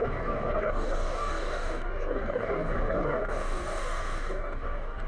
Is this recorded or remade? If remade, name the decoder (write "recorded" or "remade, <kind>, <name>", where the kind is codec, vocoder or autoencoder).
remade, codec, DAC